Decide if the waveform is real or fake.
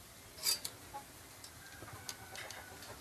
real